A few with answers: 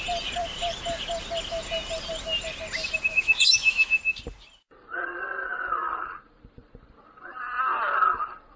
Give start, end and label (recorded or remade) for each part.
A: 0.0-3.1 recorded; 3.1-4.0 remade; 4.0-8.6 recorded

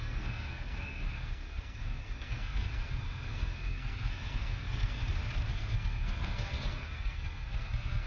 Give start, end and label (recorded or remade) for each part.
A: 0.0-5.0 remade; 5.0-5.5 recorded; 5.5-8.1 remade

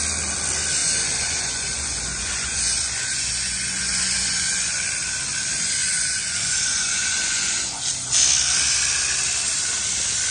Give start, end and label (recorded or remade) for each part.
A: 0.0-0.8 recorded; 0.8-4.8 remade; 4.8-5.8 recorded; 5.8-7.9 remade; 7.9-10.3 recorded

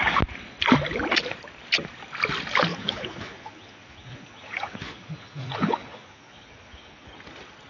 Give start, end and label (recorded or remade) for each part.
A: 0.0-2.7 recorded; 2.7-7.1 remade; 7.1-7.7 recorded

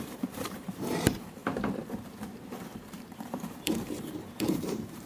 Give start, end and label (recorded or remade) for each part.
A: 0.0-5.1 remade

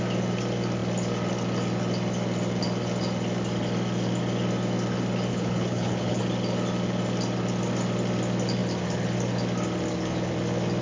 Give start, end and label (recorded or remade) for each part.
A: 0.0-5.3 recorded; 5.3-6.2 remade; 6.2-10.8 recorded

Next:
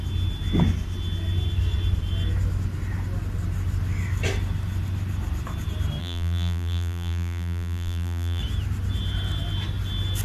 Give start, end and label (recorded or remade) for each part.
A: 0.0-6.0 recorded; 6.0-8.4 remade; 8.4-10.2 recorded